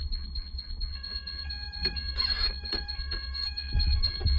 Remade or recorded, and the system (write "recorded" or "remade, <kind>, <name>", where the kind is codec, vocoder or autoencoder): remade, vocoder, WaveNeXt